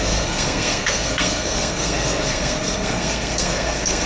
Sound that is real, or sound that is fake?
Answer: fake